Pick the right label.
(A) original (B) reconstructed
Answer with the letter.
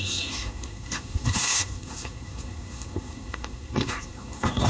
B